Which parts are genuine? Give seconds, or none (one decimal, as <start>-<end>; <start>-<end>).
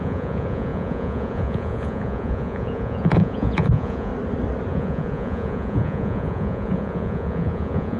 4.1-4.7